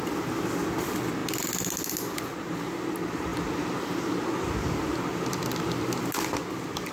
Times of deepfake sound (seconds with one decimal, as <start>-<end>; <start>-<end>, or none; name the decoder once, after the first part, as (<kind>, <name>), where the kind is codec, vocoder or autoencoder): none

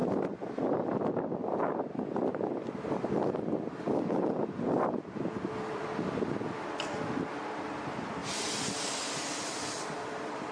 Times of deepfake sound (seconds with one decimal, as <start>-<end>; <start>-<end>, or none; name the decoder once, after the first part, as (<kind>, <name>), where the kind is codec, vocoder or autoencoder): 8.2-10.5 (vocoder, BigVGAN v2)

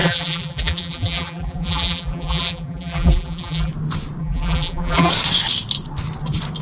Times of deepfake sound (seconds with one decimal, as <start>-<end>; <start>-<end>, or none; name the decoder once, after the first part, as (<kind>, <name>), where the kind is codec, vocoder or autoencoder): 0.0-3.7 (vocoder, BigVGAN v2); 4.2-5.1

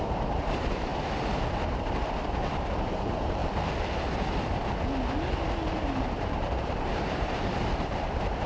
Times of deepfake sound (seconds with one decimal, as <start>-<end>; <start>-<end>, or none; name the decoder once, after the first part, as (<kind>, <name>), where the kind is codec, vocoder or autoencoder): 0.0-0.9 (vocoder, BigVGAN v2); 1.7-3.4; 5.8-8.5

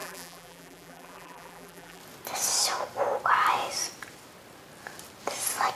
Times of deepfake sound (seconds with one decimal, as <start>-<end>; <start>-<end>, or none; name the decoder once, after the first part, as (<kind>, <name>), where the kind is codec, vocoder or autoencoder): 0.0-2.0 (vocoder, BigVGAN v2)

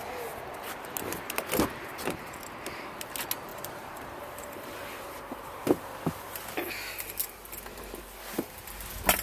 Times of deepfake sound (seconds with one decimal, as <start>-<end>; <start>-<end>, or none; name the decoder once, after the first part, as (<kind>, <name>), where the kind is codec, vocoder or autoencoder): 3.5-4.2 (vocoder, BigVGAN v2)